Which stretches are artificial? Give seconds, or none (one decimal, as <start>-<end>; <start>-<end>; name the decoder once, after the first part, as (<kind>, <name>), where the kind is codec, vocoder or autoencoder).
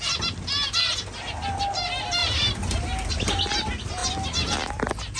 none